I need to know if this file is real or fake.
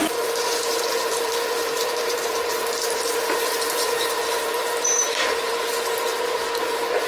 fake